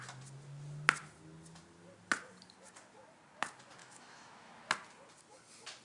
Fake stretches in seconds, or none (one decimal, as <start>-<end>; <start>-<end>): 3.8-4.6